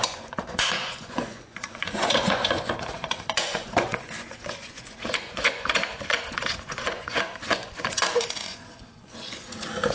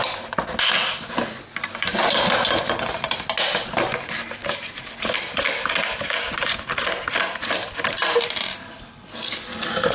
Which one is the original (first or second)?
second